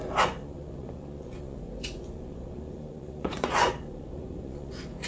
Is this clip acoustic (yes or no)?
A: no